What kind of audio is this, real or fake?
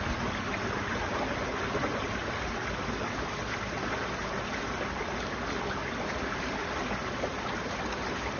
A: real